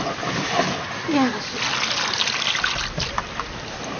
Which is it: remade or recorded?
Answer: recorded